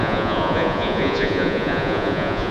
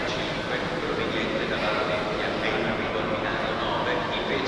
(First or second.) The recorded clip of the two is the second